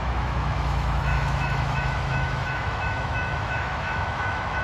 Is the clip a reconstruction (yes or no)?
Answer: yes